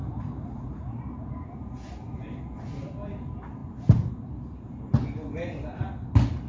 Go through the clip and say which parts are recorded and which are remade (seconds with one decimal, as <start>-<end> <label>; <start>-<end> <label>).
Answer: 0.0-6.5 recorded

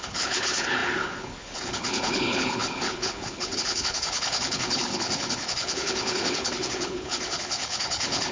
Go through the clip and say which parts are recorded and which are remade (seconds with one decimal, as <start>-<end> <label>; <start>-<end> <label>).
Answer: 0.0-8.3 remade

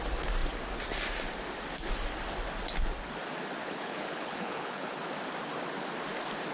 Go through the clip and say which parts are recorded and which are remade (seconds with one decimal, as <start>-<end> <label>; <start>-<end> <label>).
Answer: 0.0-3.6 recorded; 3.6-4.9 remade; 4.9-6.5 recorded

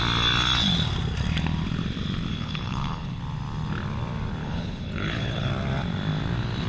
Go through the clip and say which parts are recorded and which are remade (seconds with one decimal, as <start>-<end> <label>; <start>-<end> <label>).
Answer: 0.0-2.3 recorded; 2.3-3.2 remade; 3.2-4.4 recorded; 4.4-5.5 remade; 5.5-6.7 recorded

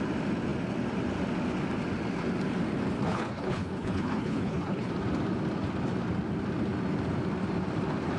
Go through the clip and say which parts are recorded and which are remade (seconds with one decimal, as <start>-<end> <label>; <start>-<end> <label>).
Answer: 0.0-3.1 recorded; 3.1-4.9 remade; 4.9-8.2 recorded

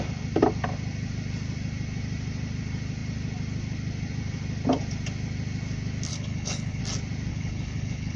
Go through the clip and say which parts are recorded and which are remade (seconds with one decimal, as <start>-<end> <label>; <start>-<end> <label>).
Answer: 0.0-6.1 recorded; 6.1-6.8 remade; 6.8-7.3 recorded; 7.3-8.2 remade

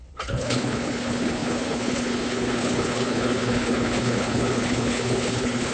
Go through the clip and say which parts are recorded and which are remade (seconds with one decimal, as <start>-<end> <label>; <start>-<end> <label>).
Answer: 0.0-5.7 remade

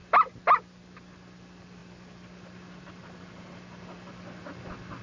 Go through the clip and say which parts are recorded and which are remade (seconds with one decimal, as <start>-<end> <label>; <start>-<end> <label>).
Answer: 0.0-5.0 recorded